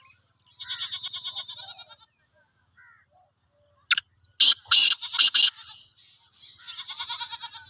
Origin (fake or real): real